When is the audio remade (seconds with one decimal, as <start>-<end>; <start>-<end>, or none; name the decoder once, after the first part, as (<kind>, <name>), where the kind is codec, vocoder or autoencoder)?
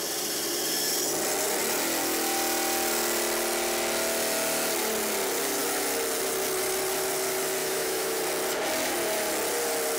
7.6-8.2 (autoencoder, DAC-VAE)